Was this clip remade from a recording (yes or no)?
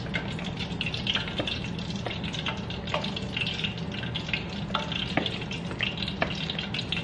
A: no